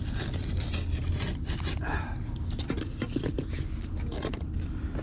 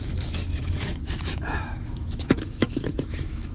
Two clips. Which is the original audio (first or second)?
first